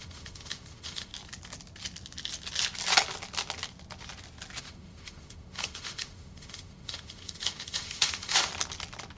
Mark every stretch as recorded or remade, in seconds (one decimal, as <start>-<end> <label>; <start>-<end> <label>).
0.0-1.1 remade; 1.1-4.6 recorded; 4.6-8.5 remade; 8.5-9.2 recorded